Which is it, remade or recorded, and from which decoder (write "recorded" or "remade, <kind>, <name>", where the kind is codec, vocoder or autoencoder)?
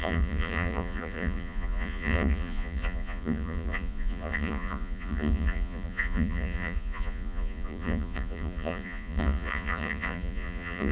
remade, vocoder, Vocos